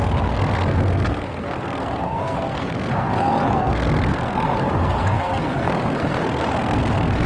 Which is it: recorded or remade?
remade